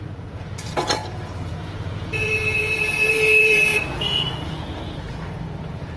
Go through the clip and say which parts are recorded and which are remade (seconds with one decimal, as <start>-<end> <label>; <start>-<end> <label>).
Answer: 0.0-6.0 remade